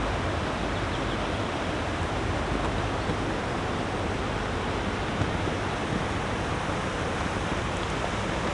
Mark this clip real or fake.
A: real